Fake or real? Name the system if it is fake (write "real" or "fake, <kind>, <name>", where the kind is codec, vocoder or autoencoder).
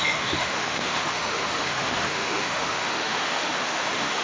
fake, autoencoder, DAC-VAE